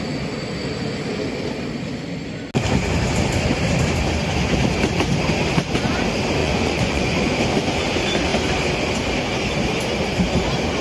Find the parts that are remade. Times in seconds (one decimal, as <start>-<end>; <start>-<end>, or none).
6.4-7.4